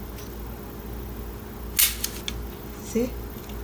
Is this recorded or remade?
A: recorded